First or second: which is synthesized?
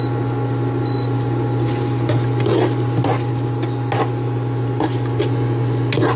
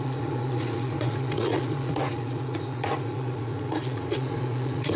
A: second